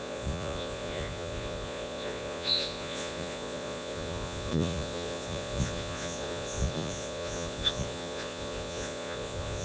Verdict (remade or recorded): remade